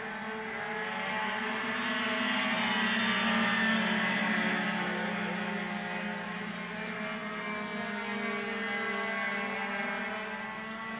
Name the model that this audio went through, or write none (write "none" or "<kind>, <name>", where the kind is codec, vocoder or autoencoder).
none